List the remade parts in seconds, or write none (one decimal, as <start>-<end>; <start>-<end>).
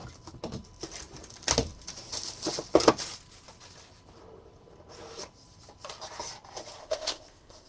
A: 6.8-7.7